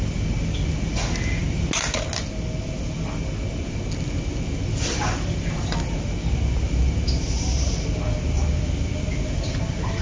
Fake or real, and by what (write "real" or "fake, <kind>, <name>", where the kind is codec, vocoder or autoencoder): real